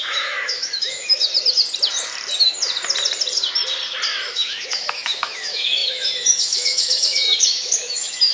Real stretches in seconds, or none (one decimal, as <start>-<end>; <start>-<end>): 1.3-4.3